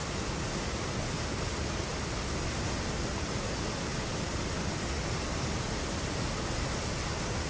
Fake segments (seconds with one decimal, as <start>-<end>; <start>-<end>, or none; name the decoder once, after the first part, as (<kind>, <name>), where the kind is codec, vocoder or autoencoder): none